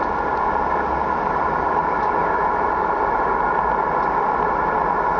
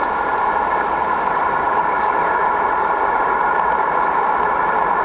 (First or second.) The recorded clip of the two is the first